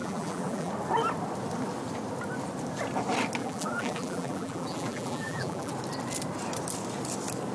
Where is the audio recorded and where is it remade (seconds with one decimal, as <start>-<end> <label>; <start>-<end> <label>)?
0.0-0.7 remade; 0.7-3.4 recorded; 3.4-5.7 remade; 5.7-7.5 recorded